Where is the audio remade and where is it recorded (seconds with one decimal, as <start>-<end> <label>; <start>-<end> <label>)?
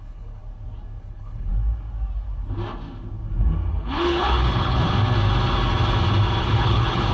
0.0-0.4 remade; 0.4-1.0 recorded; 1.0-1.5 remade; 1.5-3.7 recorded; 3.7-4.9 remade; 4.9-6.4 recorded; 6.4-7.1 remade